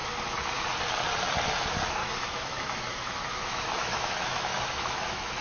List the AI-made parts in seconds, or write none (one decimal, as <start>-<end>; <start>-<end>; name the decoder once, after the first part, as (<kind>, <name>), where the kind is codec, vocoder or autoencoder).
2.0-5.4 (autoencoder, DAC-VAE)